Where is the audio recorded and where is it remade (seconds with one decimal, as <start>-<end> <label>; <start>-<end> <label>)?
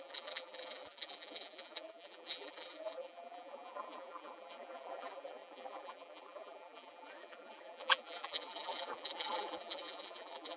0.0-10.6 remade